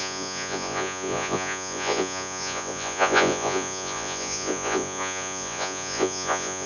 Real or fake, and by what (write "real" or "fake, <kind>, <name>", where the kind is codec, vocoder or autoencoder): fake, vocoder, Vocos